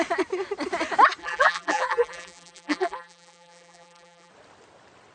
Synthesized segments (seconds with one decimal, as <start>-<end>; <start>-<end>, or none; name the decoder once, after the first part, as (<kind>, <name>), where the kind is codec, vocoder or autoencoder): 1.2-4.3 (vocoder, BigVGAN v2)